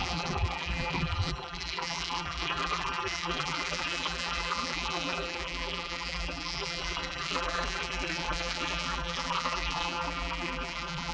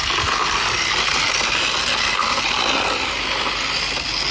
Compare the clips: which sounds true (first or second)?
second